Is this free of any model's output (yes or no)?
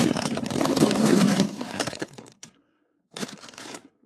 no